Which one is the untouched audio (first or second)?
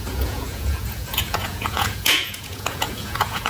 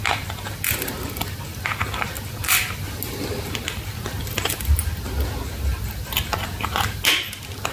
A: second